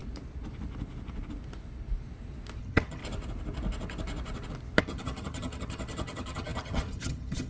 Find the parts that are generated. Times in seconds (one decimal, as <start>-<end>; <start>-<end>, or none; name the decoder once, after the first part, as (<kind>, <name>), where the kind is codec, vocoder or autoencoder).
2.6-3.0 (vocoder, HiFi-GAN); 4.8-7.5